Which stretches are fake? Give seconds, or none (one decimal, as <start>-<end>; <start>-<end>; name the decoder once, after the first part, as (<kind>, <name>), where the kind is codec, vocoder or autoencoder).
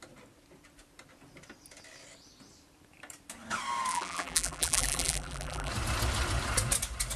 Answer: 3.9-5.7 (vocoder, BigVGAN v2)